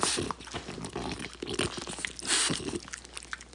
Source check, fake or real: real